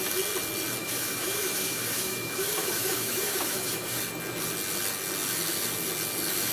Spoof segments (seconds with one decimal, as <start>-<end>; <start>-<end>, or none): 0.8-4.0